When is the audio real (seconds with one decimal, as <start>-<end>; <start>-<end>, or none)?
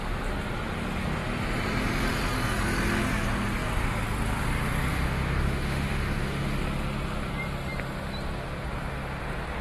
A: 0.0-4.9; 6.6-9.6